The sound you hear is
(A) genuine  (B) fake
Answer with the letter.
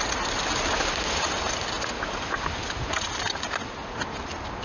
A